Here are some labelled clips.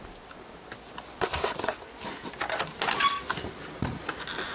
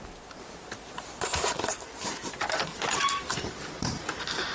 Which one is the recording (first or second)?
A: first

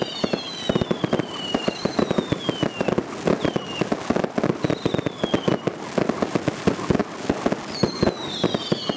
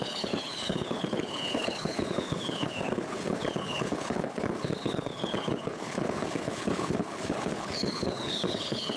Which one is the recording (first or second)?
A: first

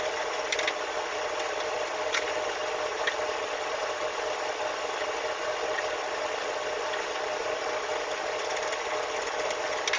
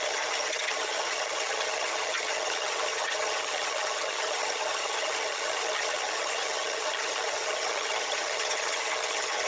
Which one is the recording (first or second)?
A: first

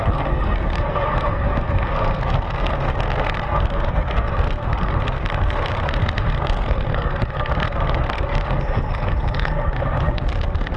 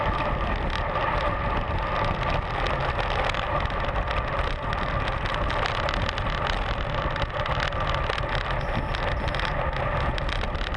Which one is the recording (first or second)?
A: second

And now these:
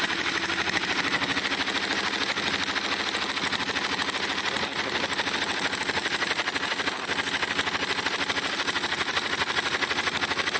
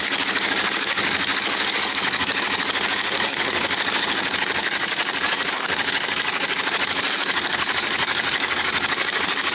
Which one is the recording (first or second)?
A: first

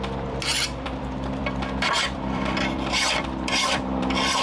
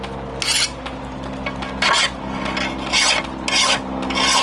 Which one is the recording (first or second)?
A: second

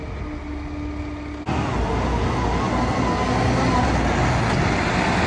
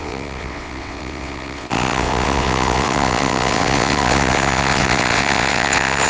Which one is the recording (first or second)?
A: first